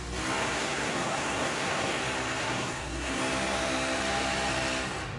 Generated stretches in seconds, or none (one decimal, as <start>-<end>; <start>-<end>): 0.4-2.0; 2.4-3.2